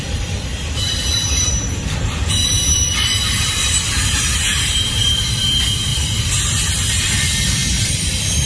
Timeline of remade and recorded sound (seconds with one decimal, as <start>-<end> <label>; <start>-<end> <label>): 0.0-8.5 remade